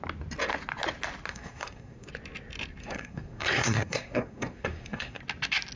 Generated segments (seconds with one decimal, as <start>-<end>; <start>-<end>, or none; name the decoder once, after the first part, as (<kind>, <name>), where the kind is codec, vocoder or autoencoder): 1.3-2.1 (codec, SNAC); 2.8-5.2